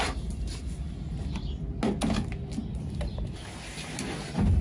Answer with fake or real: real